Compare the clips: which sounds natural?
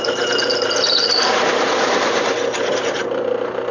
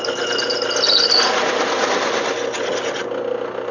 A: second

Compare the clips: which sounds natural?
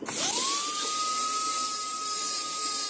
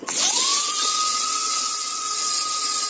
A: first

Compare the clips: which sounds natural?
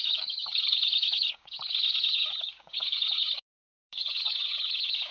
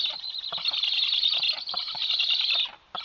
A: second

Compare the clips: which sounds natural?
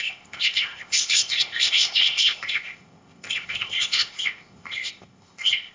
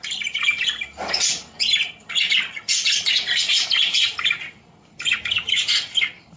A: second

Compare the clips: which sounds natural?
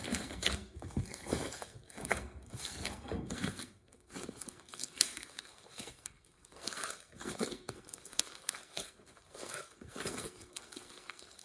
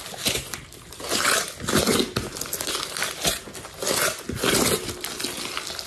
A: second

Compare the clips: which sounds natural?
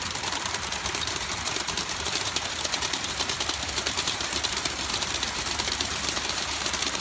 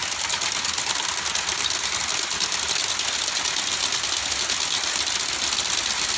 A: second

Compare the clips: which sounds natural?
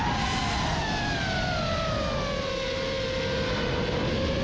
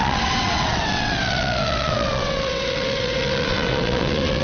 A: first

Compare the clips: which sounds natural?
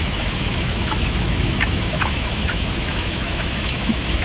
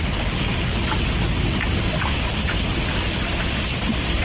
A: second